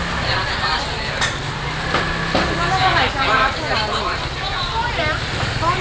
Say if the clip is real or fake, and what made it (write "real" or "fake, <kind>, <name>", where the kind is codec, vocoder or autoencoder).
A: real